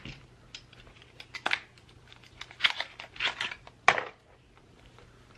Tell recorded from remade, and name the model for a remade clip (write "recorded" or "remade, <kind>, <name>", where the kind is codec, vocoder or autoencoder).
recorded